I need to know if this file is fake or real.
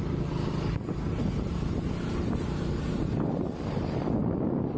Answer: real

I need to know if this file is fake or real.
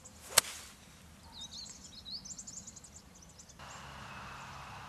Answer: real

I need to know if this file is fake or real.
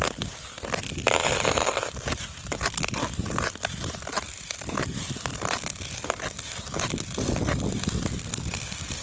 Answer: real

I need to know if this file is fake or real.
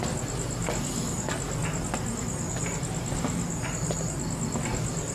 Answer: real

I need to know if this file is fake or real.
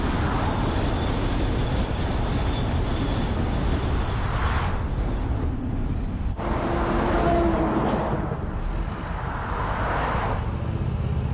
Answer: real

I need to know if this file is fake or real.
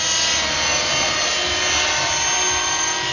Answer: real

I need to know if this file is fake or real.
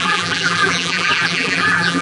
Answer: fake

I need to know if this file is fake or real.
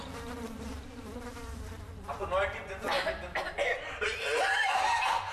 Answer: fake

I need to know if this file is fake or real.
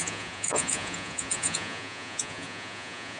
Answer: fake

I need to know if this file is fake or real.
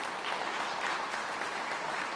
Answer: real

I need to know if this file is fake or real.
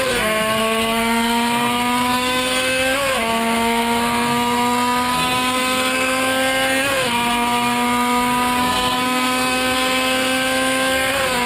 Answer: fake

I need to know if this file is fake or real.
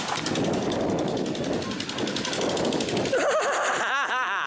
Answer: real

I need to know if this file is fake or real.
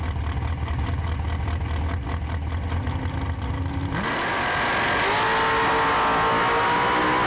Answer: real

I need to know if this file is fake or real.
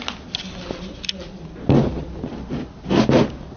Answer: real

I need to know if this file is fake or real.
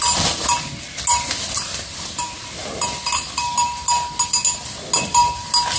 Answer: real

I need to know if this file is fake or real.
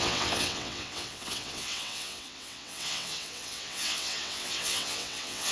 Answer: fake